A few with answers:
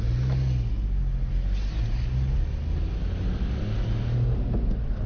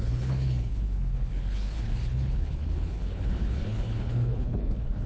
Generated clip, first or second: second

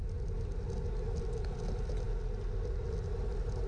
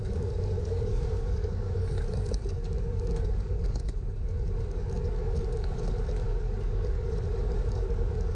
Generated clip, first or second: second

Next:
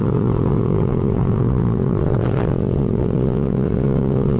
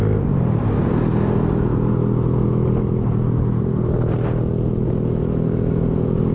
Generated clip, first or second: first